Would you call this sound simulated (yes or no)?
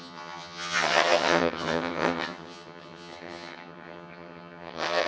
yes